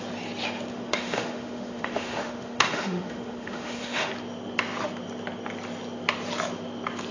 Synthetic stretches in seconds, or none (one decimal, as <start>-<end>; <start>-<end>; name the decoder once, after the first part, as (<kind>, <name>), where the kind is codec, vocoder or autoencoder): 0.7-4.1 (autoencoder, DAC-VAE)